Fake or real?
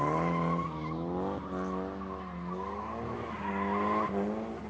real